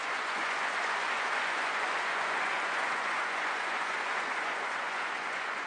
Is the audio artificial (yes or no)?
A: yes